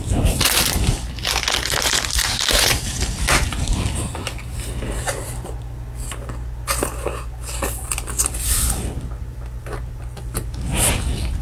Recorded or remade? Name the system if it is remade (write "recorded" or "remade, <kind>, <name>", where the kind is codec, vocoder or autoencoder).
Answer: recorded